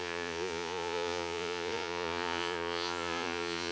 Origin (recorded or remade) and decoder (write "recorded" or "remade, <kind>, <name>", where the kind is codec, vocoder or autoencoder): remade, vocoder, Vocos